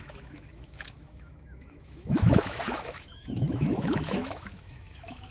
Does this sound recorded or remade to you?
remade